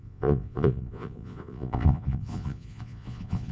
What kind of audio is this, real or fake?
fake